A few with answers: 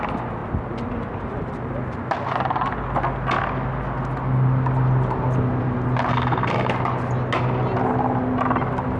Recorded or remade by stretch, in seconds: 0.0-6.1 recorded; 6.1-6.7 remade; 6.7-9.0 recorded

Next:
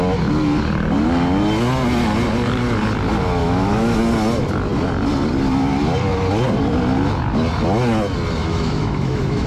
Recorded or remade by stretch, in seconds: 0.0-3.4 recorded; 3.4-4.0 remade; 4.0-8.4 recorded; 8.4-9.5 remade

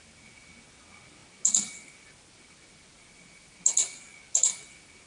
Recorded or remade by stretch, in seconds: 0.0-5.1 recorded

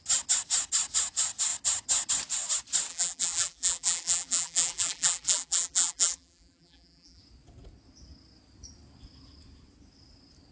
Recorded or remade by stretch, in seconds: 0.0-2.9 recorded; 2.9-7.2 remade; 7.2-10.5 recorded

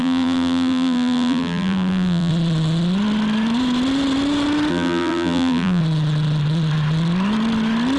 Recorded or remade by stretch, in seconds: 0.0-2.3 remade; 2.3-4.7 recorded; 4.7-5.8 remade; 5.8-8.0 recorded

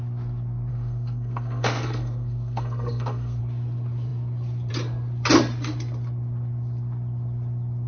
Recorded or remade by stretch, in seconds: 0.0-0.7 recorded; 0.7-3.4 remade; 3.4-7.9 recorded

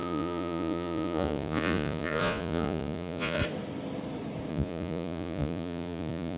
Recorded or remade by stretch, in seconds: 0.0-3.4 remade; 3.4-4.5 recorded; 4.5-6.4 remade

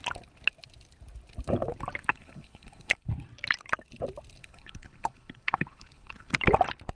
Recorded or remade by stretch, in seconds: 0.0-2.1 recorded; 2.1-3.1 remade; 3.1-4.4 recorded; 4.4-6.3 remade; 6.3-6.9 recorded